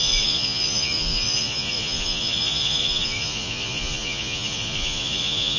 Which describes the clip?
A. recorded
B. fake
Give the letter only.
B